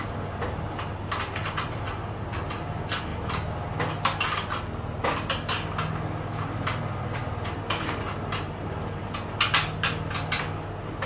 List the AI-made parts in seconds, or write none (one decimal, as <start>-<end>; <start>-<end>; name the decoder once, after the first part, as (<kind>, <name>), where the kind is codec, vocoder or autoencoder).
none